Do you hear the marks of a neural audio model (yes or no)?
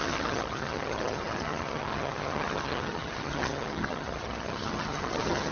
yes